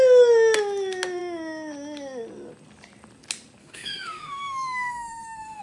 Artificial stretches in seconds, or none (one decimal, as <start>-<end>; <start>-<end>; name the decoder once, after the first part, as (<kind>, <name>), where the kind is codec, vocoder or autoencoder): 3.6-5.6 (autoencoder, DAC-VAE)